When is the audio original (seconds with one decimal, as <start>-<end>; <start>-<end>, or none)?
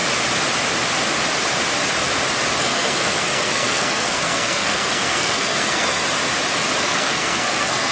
0.0-2.6; 6.0-6.8